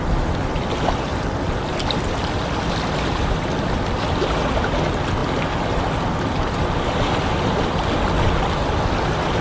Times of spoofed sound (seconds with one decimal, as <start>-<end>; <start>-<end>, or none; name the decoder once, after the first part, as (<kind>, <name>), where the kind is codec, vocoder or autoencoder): 1.1-4.2 (vocoder, BigVGAN v2)